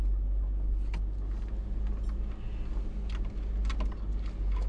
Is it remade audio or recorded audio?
recorded